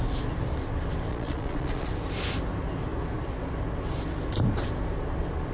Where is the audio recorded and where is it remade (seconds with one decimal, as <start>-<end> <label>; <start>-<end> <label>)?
0.0-1.1 recorded; 1.1-1.9 remade; 1.9-5.5 recorded